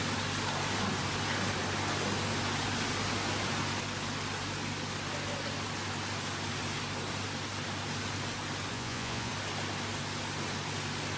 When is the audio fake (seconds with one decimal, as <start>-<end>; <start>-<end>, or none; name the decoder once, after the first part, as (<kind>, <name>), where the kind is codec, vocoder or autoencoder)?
8.7-9.3 (vocoder, Vocos)